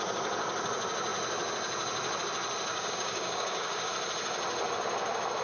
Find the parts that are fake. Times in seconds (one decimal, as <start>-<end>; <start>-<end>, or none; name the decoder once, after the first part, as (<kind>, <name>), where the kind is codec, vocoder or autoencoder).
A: 2.7-3.9 (codec, DAC)